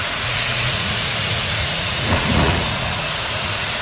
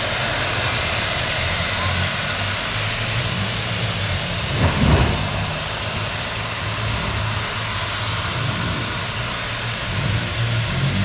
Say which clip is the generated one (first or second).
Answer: first